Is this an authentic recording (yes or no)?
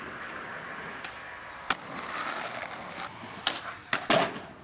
yes